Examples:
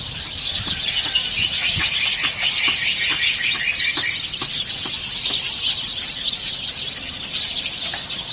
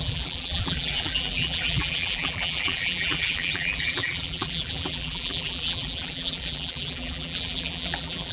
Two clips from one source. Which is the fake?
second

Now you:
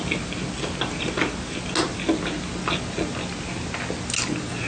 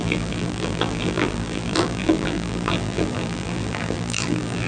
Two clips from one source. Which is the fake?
second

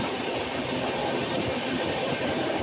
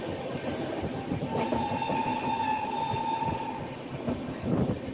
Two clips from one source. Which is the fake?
first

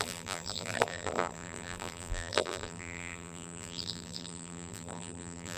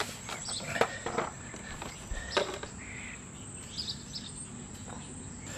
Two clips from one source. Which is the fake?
first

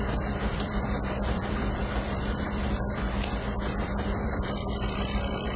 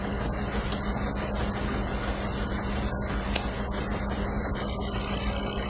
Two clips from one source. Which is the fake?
first